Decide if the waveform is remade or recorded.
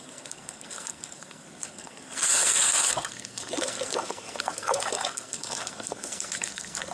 remade